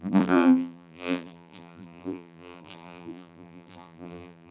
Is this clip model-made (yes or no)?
yes